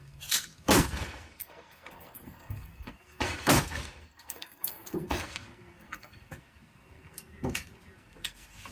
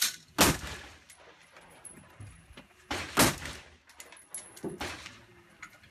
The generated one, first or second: first